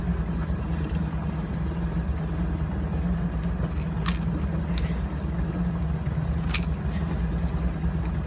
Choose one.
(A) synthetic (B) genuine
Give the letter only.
B